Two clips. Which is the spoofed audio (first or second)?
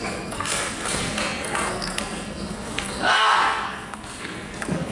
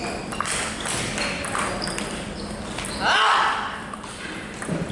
first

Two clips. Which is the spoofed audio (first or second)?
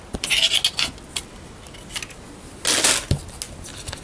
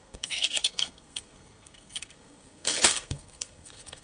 second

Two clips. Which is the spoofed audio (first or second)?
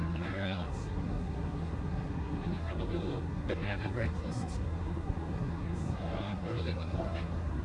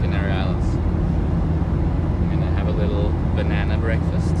first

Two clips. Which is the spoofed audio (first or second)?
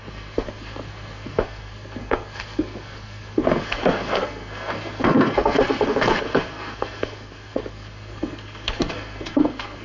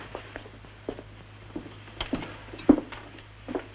first